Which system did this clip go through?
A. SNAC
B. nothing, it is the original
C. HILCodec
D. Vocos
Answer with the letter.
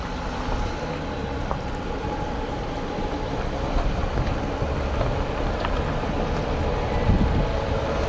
B